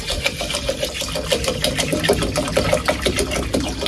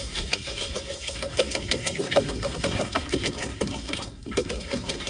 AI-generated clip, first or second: second